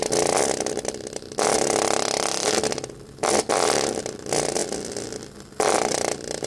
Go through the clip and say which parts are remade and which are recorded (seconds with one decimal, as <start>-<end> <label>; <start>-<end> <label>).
0.0-6.5 recorded